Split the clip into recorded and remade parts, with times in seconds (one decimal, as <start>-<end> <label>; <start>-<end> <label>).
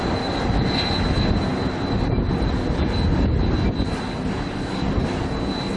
0.0-5.8 recorded